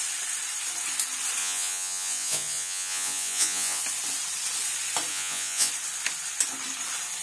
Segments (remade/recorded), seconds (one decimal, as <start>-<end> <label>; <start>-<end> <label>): 0.0-1.4 recorded; 1.4-3.8 remade; 3.8-5.1 recorded; 5.1-5.7 remade; 5.7-7.2 recorded